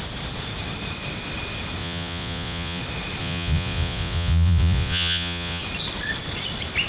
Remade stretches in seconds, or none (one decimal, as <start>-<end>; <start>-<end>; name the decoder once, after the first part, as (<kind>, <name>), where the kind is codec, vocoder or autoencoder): 1.8-2.8 (vocoder, Vocos); 3.2-5.6